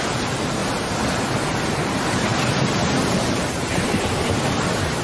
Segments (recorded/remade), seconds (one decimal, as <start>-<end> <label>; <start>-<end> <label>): 0.0-0.6 remade; 0.6-1.2 recorded; 1.2-5.0 remade